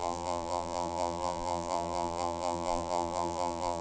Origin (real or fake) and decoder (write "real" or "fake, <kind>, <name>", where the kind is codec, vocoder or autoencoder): fake, vocoder, BigVGAN v2